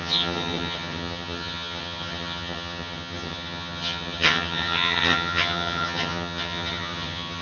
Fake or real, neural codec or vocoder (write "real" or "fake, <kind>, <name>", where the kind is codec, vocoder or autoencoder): fake, vocoder, HiFi-GAN